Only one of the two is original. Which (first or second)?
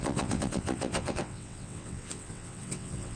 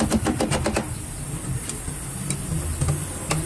second